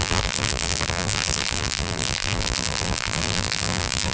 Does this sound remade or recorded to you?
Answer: remade